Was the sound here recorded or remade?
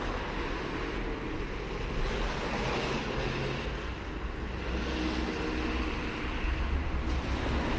recorded